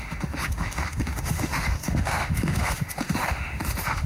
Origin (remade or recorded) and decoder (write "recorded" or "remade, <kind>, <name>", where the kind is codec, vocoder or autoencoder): remade, autoencoder, DAC-VAE